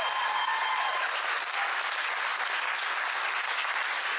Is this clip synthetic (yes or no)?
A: no